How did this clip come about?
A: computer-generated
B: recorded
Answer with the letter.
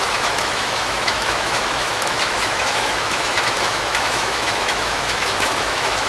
A